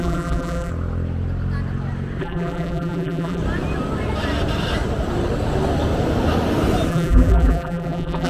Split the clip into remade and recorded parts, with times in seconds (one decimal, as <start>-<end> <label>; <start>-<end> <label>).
0.0-0.7 remade; 0.7-2.2 recorded; 2.2-3.4 remade; 3.4-6.9 recorded; 6.9-8.3 remade